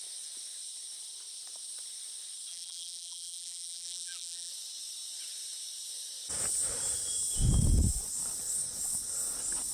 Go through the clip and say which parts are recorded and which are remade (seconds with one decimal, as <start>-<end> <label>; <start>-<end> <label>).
0.0-2.5 recorded; 2.5-4.5 remade; 4.5-9.7 recorded